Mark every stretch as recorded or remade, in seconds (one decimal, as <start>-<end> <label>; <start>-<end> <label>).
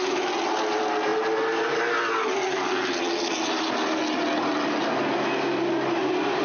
0.0-6.4 recorded